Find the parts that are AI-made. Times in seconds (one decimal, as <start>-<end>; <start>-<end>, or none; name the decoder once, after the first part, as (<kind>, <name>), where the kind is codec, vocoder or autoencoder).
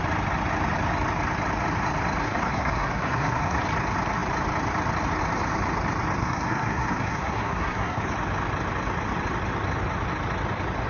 2.2-3.6 (codec, SNAC); 6.2-8.0